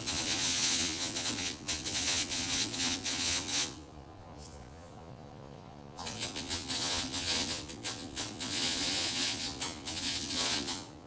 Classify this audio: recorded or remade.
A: remade